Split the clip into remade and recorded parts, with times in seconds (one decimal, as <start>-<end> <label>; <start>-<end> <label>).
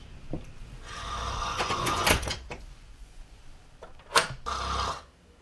0.0-0.6 recorded; 0.6-3.4 remade; 3.4-5.4 recorded